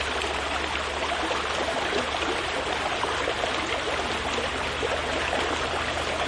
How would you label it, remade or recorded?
recorded